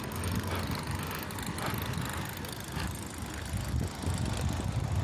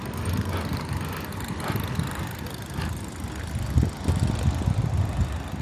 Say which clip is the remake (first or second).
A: second